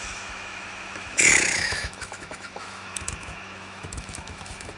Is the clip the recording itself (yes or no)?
no